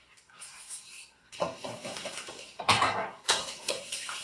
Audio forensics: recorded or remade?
remade